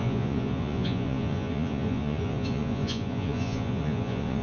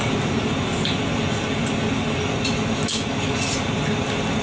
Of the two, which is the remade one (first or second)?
first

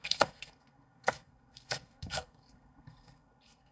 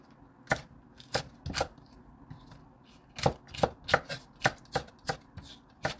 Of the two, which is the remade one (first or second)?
first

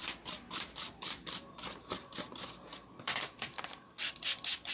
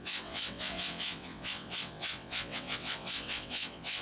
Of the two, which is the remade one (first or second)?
second